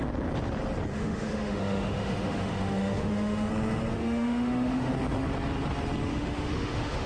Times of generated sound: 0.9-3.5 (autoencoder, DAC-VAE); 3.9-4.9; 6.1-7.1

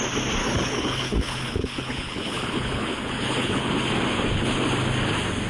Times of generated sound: 0.4-3.7 (codec, HILCodec)

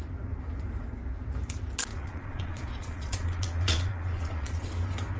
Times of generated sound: 1.9-4.7 (vocoder, Vocos)

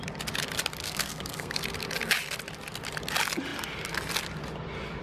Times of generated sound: 0.8-1.6 (codec, SNAC)

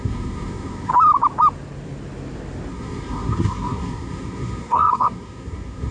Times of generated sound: 0.0-0.9 (codec, SNAC); 2.7-5.9

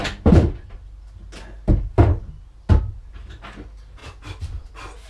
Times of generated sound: 4.0-4.6 (vocoder, BigVGAN v2)